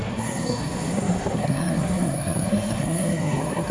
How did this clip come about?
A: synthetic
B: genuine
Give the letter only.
A